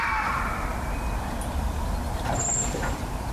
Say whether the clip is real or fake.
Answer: real